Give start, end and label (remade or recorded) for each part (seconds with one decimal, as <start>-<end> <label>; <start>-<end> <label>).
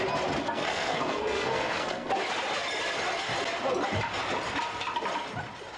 0.0-0.4 recorded; 0.4-2.1 remade; 2.1-5.8 recorded